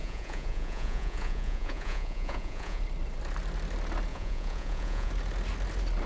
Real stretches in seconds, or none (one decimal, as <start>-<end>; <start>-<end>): 2.8-4.1; 5.1-6.1